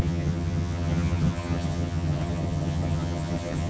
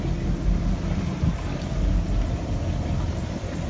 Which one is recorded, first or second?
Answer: second